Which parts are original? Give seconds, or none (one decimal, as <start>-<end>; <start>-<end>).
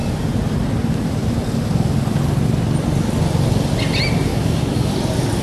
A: 0.0-4.3; 4.9-5.4